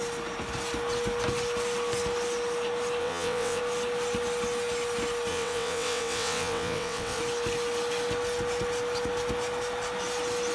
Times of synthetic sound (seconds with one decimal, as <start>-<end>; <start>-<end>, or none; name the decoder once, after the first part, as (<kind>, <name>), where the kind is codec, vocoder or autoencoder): 3.0-3.6 (vocoder, WaveNeXt); 5.3-7.2